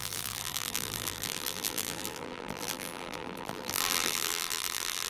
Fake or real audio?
fake